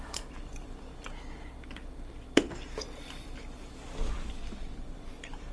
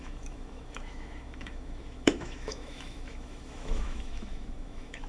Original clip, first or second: first